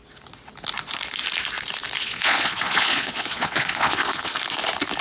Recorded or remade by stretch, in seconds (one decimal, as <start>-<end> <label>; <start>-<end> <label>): 0.0-2.0 recorded; 2.0-4.3 remade; 4.3-5.0 recorded